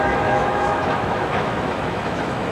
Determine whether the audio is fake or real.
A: fake